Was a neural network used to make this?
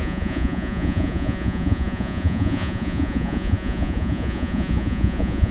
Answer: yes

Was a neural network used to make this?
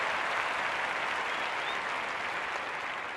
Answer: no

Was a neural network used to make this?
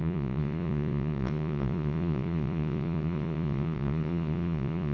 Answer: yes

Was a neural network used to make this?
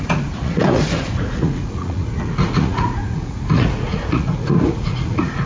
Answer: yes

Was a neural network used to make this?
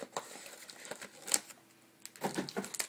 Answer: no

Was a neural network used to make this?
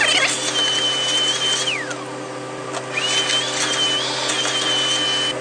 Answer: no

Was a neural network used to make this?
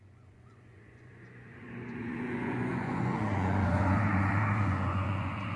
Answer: yes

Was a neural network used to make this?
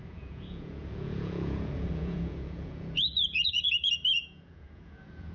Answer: yes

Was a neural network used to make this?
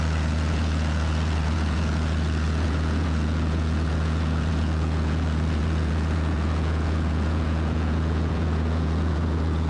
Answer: yes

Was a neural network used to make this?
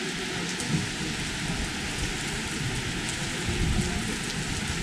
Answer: no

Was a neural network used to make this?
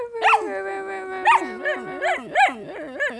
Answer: no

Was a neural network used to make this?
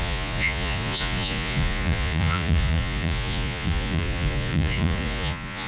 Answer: yes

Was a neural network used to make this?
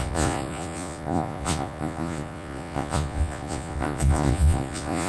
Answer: yes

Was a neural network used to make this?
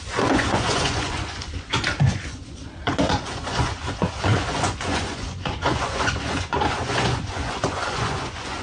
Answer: yes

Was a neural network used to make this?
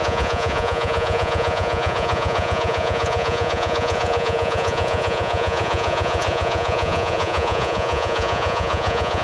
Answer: yes